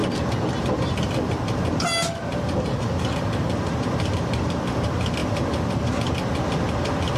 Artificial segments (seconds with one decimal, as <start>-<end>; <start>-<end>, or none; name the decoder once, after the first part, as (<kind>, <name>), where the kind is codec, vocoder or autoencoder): none